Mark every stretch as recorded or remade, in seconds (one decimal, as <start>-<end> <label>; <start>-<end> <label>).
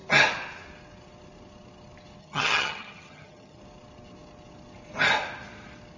0.0-2.2 recorded; 2.2-3.6 remade; 3.6-6.0 recorded